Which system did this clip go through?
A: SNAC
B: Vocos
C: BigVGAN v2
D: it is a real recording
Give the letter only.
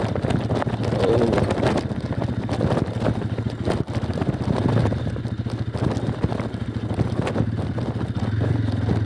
D